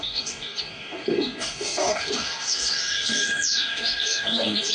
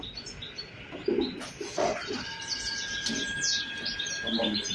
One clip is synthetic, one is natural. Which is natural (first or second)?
second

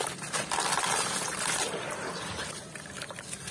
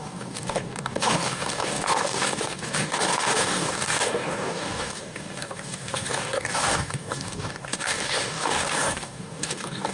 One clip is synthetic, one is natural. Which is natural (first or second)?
first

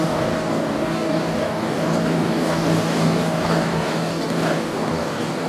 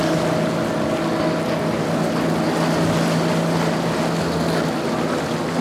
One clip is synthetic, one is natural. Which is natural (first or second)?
second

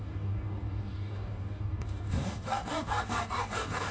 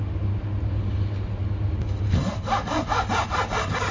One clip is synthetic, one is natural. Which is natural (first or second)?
second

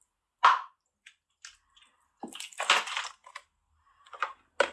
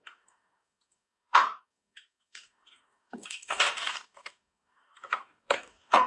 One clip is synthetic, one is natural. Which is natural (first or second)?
first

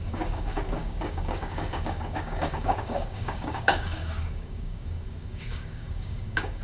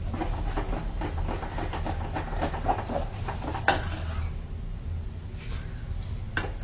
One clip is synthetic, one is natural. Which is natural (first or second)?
second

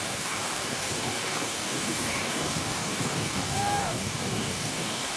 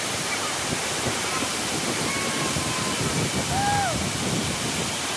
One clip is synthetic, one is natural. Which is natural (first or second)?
second